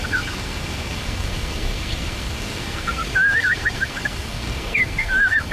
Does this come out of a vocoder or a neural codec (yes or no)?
yes